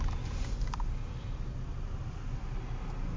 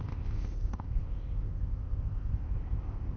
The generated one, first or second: second